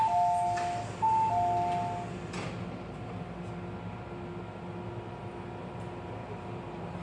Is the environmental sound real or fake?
real